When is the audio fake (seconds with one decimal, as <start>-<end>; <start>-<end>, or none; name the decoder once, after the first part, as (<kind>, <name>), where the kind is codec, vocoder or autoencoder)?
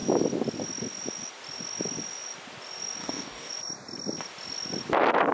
3.0-3.5 (codec, DAC)